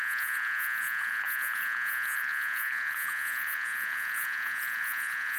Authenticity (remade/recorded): remade